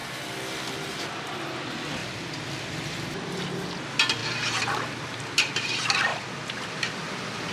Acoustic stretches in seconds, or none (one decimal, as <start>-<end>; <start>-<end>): 0.0-2.0; 3.2-6.1